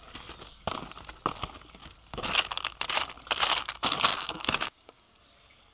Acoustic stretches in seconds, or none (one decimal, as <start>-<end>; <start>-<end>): 0.0-4.1; 5.2-5.7